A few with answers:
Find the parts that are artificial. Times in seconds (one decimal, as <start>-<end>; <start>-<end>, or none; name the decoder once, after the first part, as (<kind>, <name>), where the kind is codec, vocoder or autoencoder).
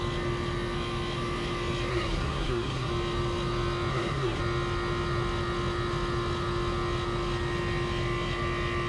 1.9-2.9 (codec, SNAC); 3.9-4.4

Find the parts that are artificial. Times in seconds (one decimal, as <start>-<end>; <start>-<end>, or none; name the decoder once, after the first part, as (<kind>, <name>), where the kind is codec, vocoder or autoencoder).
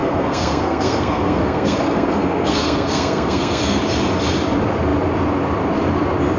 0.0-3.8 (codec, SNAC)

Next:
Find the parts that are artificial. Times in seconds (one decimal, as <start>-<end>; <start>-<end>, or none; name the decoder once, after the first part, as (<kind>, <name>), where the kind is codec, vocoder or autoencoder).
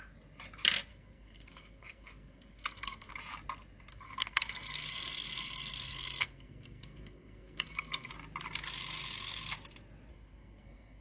0.9-3.1 (codec, SNAC); 3.9-8.1; 10.1-11.0